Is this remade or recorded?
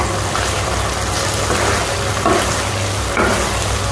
recorded